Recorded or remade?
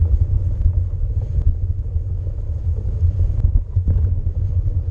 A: recorded